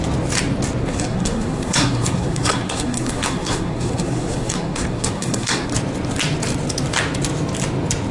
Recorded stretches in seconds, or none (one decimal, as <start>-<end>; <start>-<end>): 0.0-0.8; 5.7-8.1